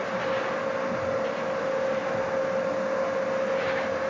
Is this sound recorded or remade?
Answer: recorded